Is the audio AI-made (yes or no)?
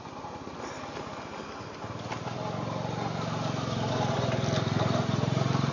no